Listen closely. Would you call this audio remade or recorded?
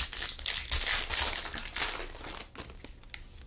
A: recorded